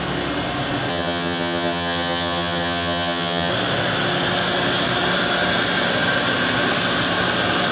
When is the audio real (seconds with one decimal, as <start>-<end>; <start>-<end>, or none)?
0.0-0.9; 3.5-7.7